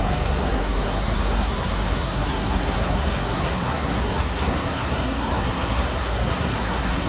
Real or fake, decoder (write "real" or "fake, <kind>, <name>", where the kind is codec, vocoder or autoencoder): fake, codec, SNAC